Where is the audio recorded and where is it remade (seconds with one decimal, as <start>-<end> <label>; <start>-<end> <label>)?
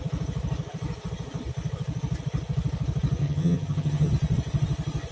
0.0-3.2 recorded; 3.2-4.1 remade; 4.1-5.1 recorded